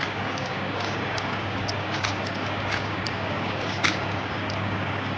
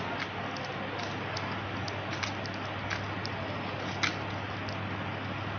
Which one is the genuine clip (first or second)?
second